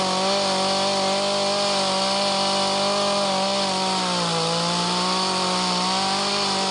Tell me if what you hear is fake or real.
real